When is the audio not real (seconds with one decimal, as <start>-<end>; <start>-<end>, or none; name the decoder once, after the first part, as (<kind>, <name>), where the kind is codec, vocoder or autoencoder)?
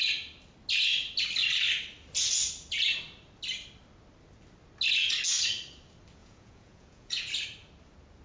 6.2-7.3 (vocoder, Vocos)